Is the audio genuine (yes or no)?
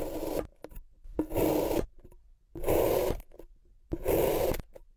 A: yes